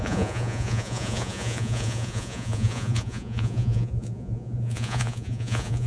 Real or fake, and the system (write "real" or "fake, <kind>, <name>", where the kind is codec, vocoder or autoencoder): fake, vocoder, Vocos